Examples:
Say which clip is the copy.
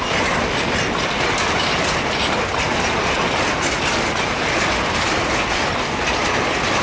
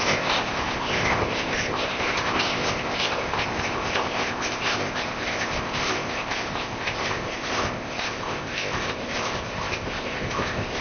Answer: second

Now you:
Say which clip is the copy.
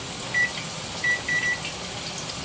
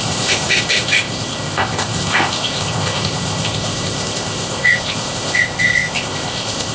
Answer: second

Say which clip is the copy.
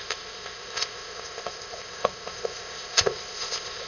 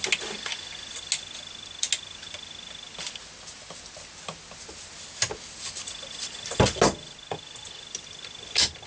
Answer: first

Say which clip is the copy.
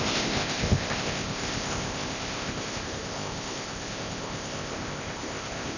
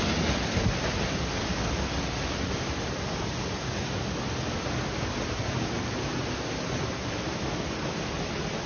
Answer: first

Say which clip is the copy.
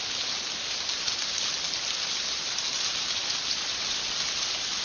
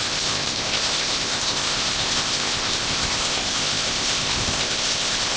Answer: second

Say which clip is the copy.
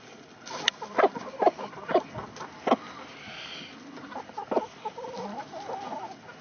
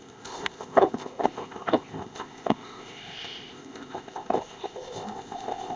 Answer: second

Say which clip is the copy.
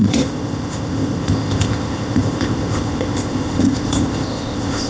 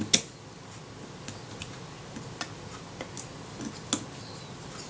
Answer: first